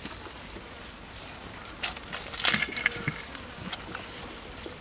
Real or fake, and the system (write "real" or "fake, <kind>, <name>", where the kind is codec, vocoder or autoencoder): real